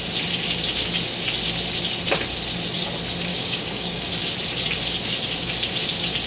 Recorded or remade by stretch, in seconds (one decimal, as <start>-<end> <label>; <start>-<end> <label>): 0.0-3.3 recorded; 3.3-4.1 remade; 4.1-6.3 recorded